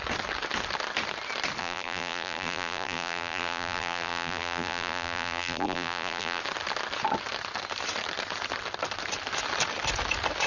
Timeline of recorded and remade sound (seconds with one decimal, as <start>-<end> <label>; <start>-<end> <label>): 0.0-1.6 recorded; 1.6-6.4 remade; 6.4-10.5 recorded